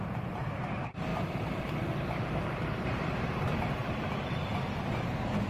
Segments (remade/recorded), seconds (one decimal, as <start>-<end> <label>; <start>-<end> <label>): 0.0-3.8 remade; 3.8-5.5 recorded

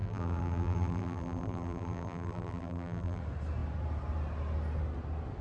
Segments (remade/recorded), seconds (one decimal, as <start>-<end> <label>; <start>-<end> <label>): 0.0-3.2 remade; 3.2-5.4 recorded